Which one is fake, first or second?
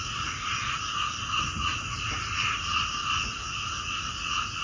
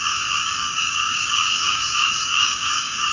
second